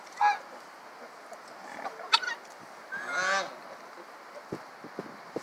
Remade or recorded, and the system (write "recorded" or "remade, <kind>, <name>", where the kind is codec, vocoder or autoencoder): recorded